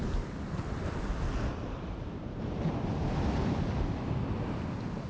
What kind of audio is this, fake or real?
real